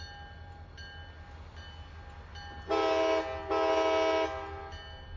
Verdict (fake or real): real